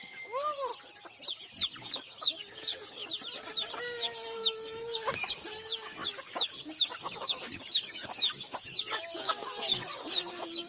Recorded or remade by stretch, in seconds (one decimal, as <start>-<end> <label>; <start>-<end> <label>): 0.0-0.7 remade; 0.7-1.8 recorded; 1.8-3.0 remade; 3.0-3.8 recorded; 3.8-10.7 remade